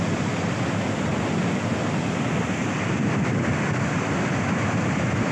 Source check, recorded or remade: recorded